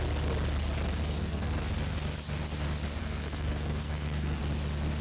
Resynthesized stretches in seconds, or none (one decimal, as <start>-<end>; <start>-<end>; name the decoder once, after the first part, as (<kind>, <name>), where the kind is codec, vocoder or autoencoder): 1.1-1.7 (codec, SNAC); 3.0-4.4